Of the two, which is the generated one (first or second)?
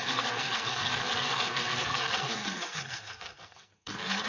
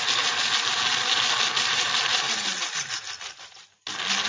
first